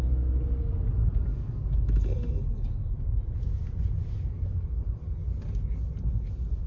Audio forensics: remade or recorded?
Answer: recorded